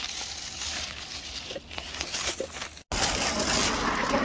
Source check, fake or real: real